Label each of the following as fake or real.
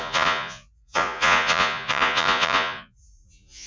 fake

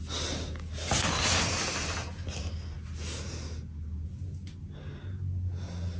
real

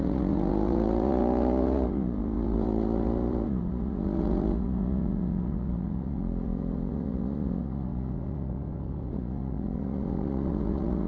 fake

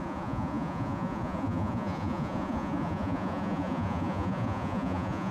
fake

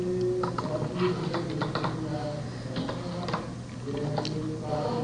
real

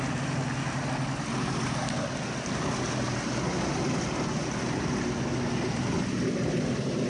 real